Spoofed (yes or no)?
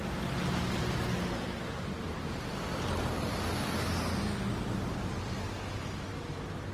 no